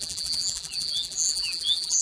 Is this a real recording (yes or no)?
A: no